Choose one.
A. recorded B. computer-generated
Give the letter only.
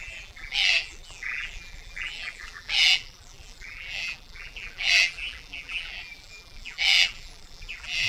B